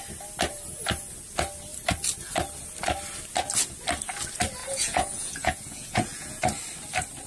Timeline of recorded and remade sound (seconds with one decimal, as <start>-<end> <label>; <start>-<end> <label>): 0.0-4.6 recorded; 4.6-6.4 remade; 6.4-7.3 recorded